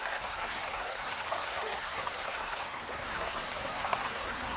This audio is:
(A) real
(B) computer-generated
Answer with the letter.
B